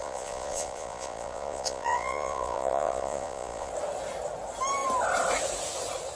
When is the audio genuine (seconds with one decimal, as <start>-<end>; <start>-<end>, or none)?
3.7-6.2